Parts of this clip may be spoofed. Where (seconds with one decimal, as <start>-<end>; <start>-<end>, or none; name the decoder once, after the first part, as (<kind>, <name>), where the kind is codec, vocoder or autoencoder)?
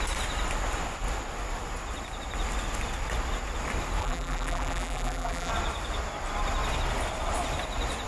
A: 4.0-5.5 (vocoder, BigVGAN v2)